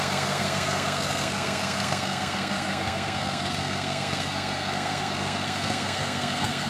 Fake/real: fake